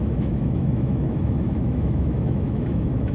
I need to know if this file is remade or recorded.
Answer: remade